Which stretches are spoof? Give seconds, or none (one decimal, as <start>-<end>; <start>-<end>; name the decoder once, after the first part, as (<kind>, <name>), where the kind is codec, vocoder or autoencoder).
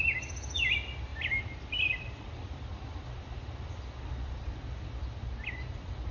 1.1-3.8 (vocoder, BigVGAN v2)